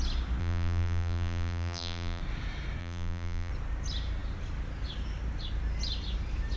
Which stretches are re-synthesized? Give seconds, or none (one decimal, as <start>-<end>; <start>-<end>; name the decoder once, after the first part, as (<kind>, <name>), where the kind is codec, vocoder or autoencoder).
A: 0.4-2.2 (vocoder, BigVGAN v2); 2.8-3.5